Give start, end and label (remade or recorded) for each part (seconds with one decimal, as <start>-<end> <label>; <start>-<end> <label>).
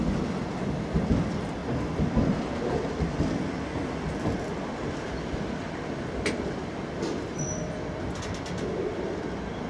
0.0-9.7 recorded